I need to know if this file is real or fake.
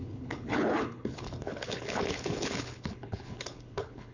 fake